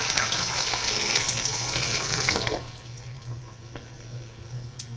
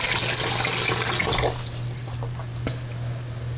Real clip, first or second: second